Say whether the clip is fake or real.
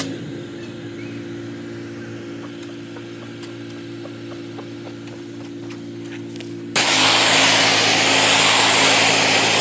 real